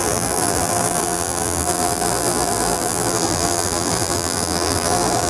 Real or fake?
fake